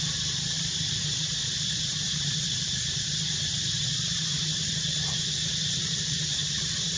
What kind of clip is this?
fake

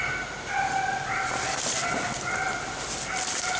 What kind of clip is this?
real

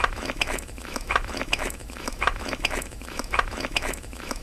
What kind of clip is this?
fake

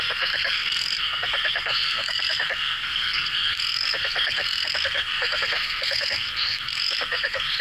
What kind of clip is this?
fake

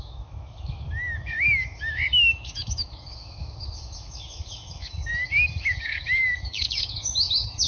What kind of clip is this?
fake